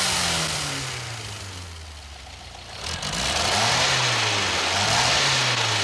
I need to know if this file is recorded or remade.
recorded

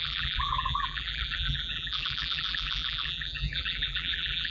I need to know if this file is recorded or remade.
remade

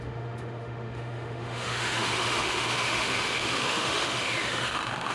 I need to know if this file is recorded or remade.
remade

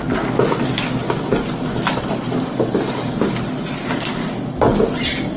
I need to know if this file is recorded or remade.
recorded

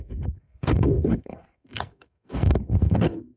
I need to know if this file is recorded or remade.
remade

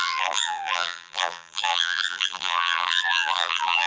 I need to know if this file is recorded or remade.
remade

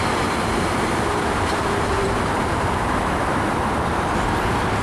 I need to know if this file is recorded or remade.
remade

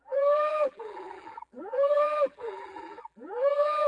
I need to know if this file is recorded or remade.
remade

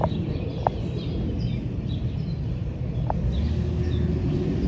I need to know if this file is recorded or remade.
recorded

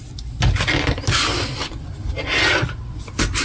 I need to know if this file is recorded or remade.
recorded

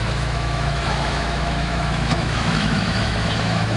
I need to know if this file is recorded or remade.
remade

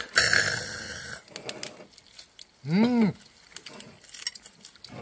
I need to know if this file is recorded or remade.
recorded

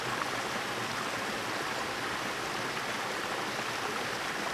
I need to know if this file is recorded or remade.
recorded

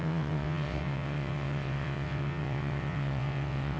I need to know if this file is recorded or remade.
remade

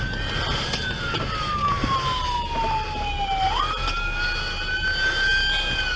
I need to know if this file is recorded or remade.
recorded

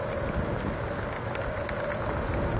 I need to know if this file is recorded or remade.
recorded